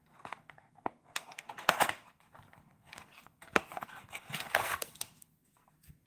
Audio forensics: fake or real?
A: fake